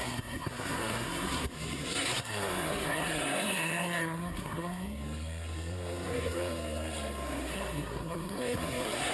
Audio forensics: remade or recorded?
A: remade